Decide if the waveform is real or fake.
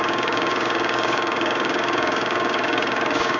fake